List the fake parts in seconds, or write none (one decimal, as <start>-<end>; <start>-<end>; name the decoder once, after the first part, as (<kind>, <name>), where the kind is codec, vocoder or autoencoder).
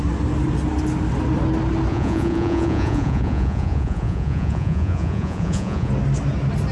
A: 1.9-5.9 (vocoder, Vocos)